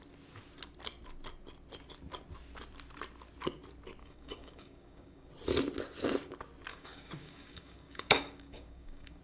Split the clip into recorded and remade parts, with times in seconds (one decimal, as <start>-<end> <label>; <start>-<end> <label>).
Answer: 0.0-4.0 recorded; 4.0-5.3 remade; 5.3-6.7 recorded; 6.7-9.2 remade